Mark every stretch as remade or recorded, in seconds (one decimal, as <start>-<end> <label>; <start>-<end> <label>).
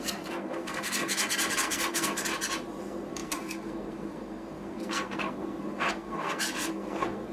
0.0-2.3 remade; 2.3-2.8 recorded; 2.8-7.3 remade